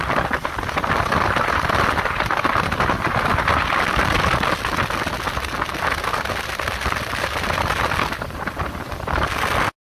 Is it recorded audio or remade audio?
recorded